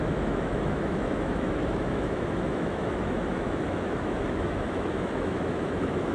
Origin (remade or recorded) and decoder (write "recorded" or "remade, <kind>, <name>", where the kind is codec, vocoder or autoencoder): remade, autoencoder, DAC-VAE